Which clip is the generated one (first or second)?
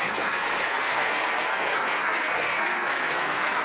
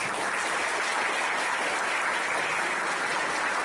first